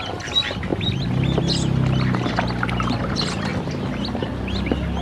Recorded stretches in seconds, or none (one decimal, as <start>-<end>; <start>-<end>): 0.0-5.0